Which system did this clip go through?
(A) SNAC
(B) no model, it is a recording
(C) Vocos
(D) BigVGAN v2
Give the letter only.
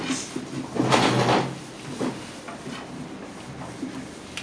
B